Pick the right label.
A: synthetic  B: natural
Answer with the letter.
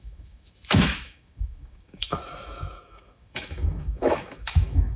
A